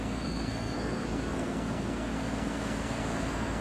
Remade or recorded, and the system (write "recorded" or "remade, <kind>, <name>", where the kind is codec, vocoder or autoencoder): remade, codec, SNAC